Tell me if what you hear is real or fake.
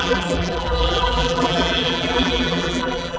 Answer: fake